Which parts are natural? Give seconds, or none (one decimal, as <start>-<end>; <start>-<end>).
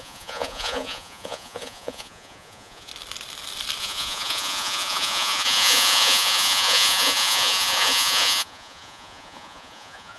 2.9-3.8